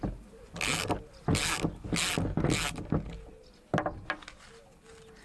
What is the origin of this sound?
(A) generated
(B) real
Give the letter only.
B